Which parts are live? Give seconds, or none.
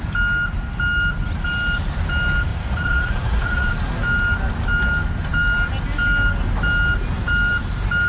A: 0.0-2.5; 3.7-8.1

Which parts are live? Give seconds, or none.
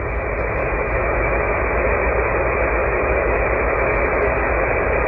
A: 0.0-0.6; 1.6-2.8; 3.4-5.1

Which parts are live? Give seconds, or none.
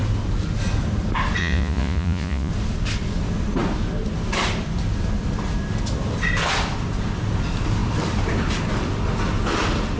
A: 0.0-1.4; 2.5-10.0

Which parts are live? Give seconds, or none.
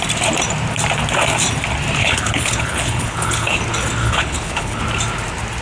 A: 0.0-2.0; 3.6-4.0; 4.8-5.6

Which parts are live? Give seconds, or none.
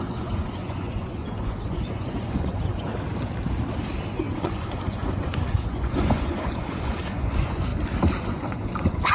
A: 2.9-4.3; 7.7-8.2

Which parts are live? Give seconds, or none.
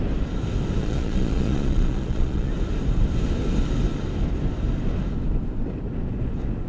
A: 0.0-0.8; 2.5-6.7